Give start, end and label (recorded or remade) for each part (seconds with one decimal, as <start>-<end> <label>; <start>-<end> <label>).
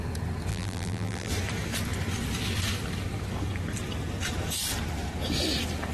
0.0-0.5 recorded; 0.5-1.3 remade; 1.3-5.9 recorded